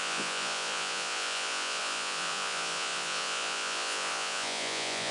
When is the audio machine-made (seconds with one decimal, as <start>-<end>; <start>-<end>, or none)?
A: 0.0-5.1